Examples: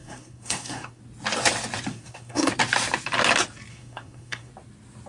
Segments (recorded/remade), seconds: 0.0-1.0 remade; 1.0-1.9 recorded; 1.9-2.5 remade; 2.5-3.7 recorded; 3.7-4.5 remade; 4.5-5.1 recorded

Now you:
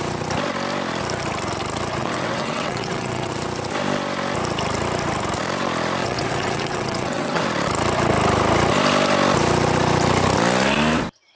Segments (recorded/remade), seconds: 0.0-2.0 recorded; 2.0-3.3 remade; 3.3-6.0 recorded; 6.0-7.4 remade; 7.4-11.4 recorded